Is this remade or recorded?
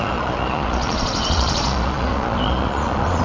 remade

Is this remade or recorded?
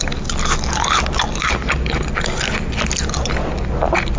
recorded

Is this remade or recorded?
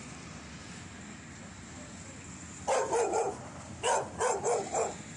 recorded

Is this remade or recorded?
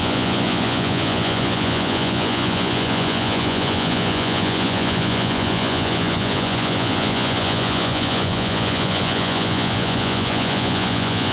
remade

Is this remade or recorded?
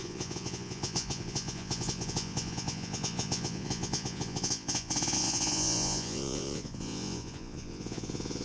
remade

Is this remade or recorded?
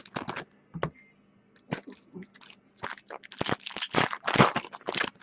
recorded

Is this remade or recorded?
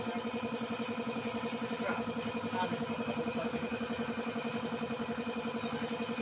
recorded